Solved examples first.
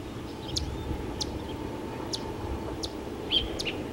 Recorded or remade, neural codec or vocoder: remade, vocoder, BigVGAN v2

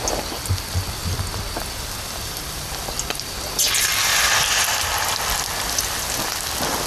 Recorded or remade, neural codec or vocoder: recorded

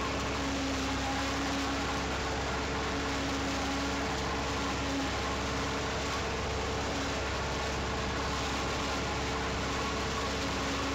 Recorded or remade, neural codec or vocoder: recorded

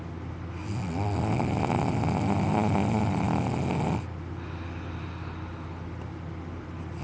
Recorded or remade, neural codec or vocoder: recorded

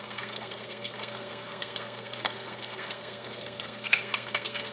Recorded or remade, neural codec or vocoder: remade, codec, SNAC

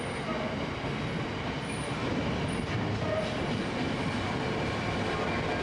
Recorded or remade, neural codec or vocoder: recorded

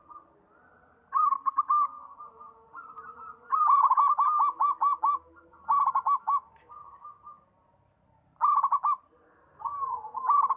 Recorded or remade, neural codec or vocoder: recorded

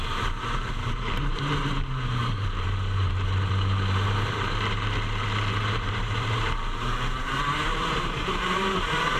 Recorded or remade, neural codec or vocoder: remade, vocoder, BigVGAN v2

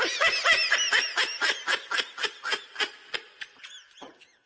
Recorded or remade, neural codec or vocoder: recorded